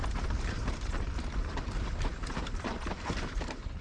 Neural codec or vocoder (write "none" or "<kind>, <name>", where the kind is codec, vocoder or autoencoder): vocoder, BigVGAN v2